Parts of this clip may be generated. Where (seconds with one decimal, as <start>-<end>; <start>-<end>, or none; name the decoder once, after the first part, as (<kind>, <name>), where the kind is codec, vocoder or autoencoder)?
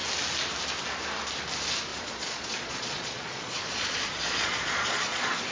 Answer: 1.9-5.5 (vocoder, Vocos)